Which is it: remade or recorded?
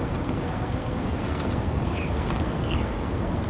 remade